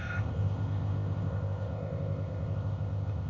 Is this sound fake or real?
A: fake